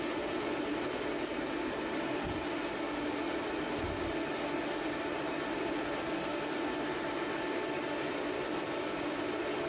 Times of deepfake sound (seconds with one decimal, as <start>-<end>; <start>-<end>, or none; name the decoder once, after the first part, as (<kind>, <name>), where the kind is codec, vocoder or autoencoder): none

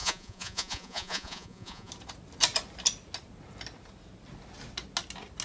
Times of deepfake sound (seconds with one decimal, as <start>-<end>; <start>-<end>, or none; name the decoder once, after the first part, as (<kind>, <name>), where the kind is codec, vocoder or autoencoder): 0.0-1.9 (vocoder, Vocos)

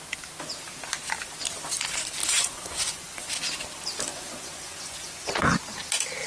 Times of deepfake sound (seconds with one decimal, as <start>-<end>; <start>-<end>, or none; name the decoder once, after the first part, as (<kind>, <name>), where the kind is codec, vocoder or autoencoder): 2.2-3.3 (vocoder, Vocos); 4.1-5.4

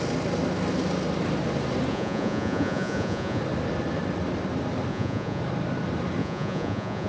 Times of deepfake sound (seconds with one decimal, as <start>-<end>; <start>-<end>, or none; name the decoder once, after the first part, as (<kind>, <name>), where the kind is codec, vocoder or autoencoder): 1.9-3.4 (vocoder, Vocos); 4.9-5.4; 6.2-7.1

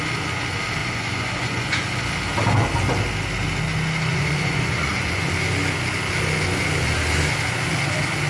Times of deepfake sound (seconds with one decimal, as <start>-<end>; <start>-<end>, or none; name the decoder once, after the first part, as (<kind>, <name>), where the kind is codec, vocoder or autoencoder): 0.8-2.0 (vocoder, Vocos); 4.1-5.3

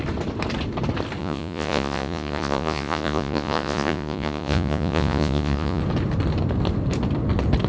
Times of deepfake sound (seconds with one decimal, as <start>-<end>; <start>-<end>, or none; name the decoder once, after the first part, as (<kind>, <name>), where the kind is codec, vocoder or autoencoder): 1.2-5.8 (vocoder, Vocos)

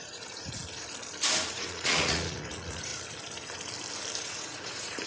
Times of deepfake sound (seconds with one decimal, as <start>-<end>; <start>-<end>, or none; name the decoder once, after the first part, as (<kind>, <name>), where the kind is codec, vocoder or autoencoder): 0.0-0.6 (vocoder, Vocos); 1.5-2.9; 4.2-5.1

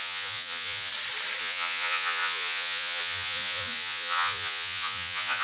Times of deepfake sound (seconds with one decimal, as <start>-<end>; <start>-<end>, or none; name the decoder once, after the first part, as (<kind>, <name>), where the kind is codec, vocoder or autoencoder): 0.0-0.9 (vocoder, Vocos); 1.4-5.4